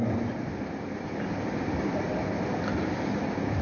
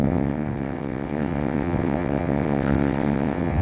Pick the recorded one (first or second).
first